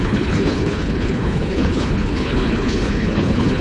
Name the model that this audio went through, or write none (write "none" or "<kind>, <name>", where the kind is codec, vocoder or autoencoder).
codec, HILCodec